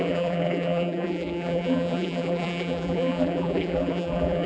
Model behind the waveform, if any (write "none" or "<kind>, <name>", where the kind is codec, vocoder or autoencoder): vocoder, BigVGAN v2